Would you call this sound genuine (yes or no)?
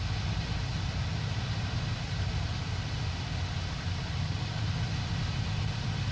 yes